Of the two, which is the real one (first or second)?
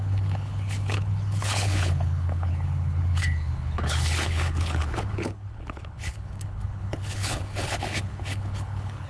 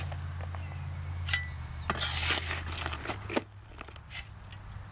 second